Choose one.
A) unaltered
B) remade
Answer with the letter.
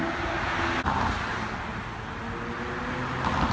A